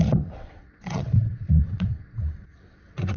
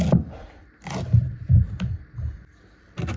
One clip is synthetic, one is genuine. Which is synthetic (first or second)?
first